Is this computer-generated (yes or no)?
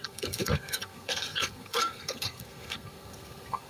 yes